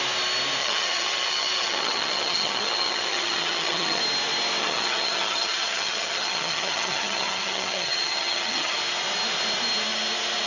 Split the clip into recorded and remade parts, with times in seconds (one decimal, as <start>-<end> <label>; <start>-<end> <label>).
0.0-0.6 recorded; 0.6-4.0 remade; 4.0-4.6 recorded; 4.6-8.8 remade; 8.8-10.5 recorded